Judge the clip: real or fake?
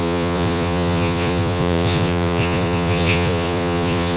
fake